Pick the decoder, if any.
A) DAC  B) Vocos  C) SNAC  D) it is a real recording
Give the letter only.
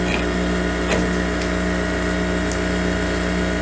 D